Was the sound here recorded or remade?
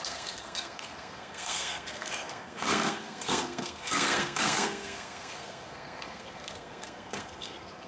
remade